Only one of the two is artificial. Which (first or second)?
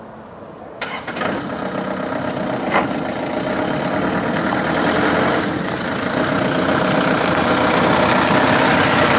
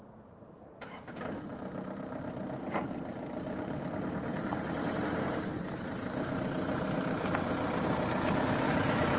second